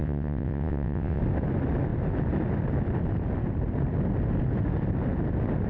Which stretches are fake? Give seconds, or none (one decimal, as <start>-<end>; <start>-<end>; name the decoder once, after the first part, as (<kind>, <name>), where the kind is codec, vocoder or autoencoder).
0.0-1.2 (vocoder, WaveNeXt)